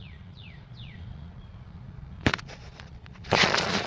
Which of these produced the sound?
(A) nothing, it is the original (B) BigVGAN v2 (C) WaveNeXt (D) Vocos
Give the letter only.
D